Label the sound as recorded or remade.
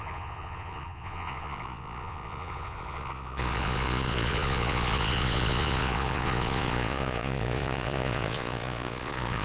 remade